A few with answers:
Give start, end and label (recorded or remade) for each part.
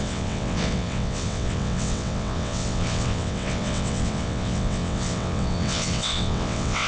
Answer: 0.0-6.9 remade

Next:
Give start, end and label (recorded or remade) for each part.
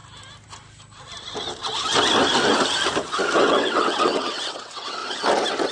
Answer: 0.0-3.4 recorded; 3.4-5.0 remade; 5.0-5.7 recorded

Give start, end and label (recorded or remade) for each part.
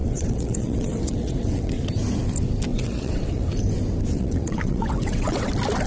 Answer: 0.0-1.8 remade; 1.8-2.7 recorded; 2.7-3.5 remade; 3.5-4.1 recorded; 4.1-5.5 remade; 5.5-5.9 recorded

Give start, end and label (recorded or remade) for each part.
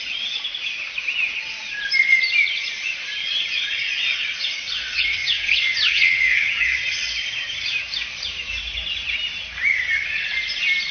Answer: 0.0-3.2 recorded; 3.2-7.0 remade; 7.0-10.9 recorded